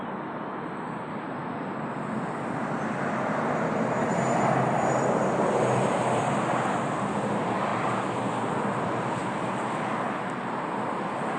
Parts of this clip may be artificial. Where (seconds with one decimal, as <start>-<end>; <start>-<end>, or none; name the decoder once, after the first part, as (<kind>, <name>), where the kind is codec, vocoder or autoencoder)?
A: 7.7-9.9 (vocoder, BigVGAN v2)